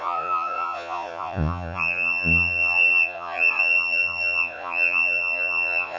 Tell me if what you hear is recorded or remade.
remade